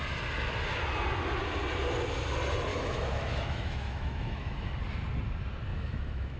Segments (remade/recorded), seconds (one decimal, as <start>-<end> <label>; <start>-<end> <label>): 0.0-2.7 recorded; 2.7-4.8 remade; 4.8-5.7 recorded; 5.7-6.4 remade